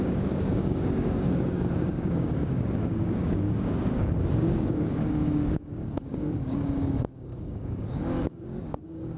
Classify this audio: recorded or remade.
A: remade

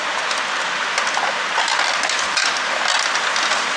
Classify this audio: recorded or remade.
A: recorded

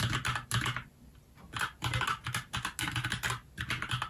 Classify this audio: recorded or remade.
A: recorded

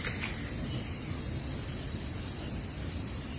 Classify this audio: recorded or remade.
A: recorded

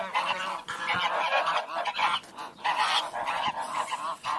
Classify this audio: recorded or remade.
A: remade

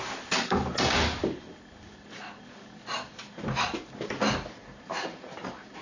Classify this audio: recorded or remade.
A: recorded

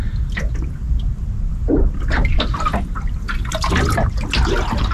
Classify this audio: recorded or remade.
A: recorded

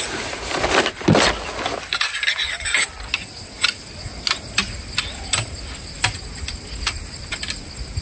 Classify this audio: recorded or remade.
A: recorded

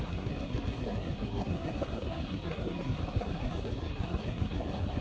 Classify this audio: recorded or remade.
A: remade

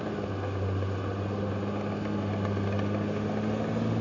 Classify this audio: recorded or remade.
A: recorded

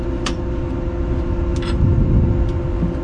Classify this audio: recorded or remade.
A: recorded